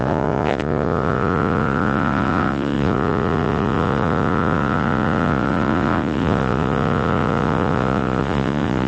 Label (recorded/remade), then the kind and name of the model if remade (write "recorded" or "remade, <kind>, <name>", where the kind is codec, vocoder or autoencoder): remade, vocoder, Vocos